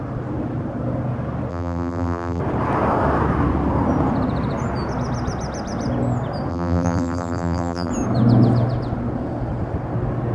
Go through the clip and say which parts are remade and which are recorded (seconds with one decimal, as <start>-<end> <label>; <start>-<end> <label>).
0.0-1.5 recorded; 1.5-2.4 remade; 2.4-6.5 recorded; 6.5-7.9 remade; 7.9-10.3 recorded